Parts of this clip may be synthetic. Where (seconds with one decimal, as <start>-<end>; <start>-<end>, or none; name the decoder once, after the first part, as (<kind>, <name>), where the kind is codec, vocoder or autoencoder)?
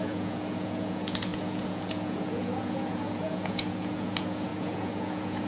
0.0-5.5 (vocoder, Vocos)